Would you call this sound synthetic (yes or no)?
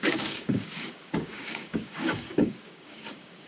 yes